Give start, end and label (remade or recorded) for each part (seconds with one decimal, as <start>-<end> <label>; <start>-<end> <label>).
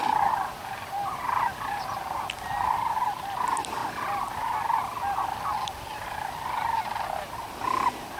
0.0-8.2 recorded